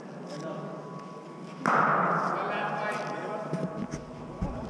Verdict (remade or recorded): recorded